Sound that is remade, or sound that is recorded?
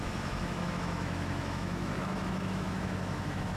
remade